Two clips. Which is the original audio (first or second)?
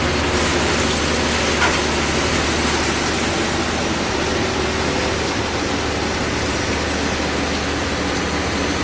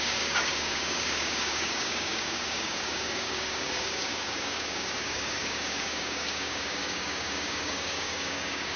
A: first